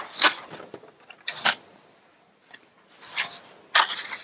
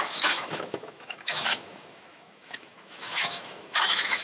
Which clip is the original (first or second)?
first